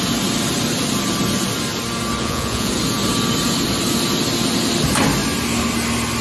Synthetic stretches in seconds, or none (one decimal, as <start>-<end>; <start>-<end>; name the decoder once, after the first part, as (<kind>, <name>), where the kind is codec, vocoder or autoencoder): 2.2-2.7 (vocoder, Vocos)